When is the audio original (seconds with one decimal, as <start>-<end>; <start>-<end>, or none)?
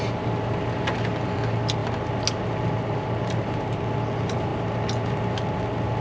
0.0-6.0